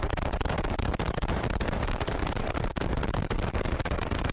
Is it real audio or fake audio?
fake